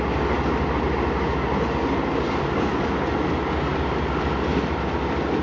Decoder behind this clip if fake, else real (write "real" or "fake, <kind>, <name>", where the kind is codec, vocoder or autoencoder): real